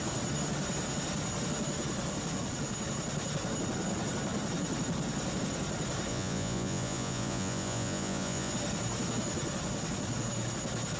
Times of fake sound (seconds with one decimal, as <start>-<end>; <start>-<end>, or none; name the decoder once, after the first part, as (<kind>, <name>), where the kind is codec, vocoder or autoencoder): 6.1-8.5 (vocoder, Vocos)